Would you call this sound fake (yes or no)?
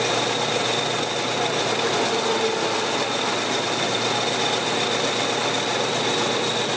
no